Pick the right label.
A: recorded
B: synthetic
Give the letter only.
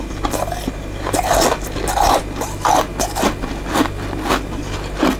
A